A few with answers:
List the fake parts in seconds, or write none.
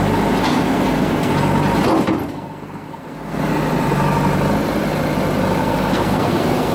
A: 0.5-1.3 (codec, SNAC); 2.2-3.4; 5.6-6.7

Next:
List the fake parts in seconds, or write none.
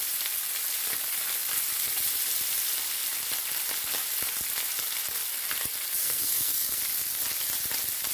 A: 6.0-6.8 (codec, SNAC)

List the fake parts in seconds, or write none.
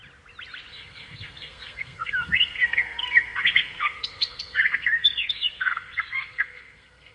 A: 0.7-7.1 (codec, SNAC)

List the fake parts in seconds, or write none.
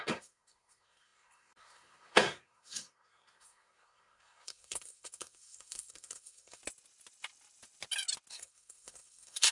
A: 0.0-6.6 (codec, SNAC); 8.3-9.5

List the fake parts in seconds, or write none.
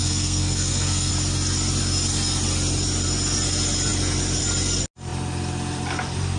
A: 0.0-1.1 (codec, SNAC)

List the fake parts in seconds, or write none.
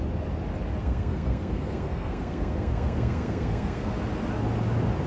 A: 0.8-3.9 (codec, SNAC)